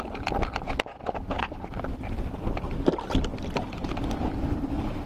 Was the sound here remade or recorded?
recorded